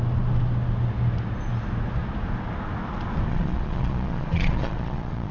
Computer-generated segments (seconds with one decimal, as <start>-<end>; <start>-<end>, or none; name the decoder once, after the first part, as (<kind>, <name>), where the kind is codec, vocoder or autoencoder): 3.3-5.3 (vocoder, Vocos)